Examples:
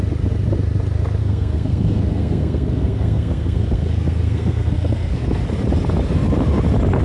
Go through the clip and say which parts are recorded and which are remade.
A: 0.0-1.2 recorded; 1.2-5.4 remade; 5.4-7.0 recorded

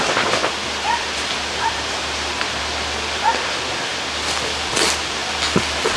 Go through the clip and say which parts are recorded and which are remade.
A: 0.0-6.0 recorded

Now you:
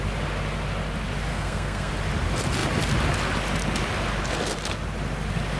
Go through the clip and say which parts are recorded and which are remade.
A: 0.0-1.3 recorded; 1.3-1.9 remade; 1.9-5.6 recorded

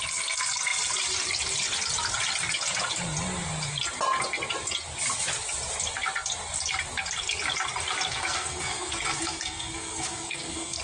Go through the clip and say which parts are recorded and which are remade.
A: 0.0-8.1 recorded; 8.1-10.8 remade

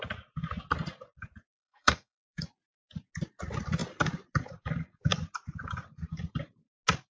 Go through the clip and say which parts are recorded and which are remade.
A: 0.0-1.5 recorded; 1.5-2.4 remade; 2.4-7.1 recorded

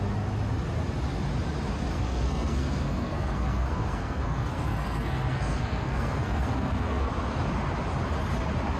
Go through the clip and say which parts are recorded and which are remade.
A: 0.0-1.9 recorded; 1.9-7.1 remade; 7.1-8.8 recorded

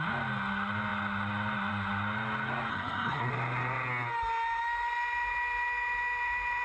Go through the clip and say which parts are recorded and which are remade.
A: 0.0-2.7 recorded; 2.7-3.3 remade; 3.3-6.6 recorded